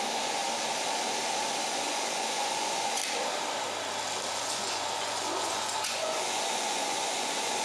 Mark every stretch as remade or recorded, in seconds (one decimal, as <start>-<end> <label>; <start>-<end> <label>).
0.0-0.4 remade; 0.4-1.7 recorded; 1.7-3.0 remade; 3.0-4.3 recorded; 4.3-7.6 remade